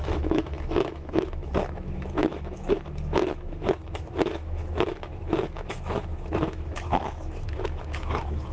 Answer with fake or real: fake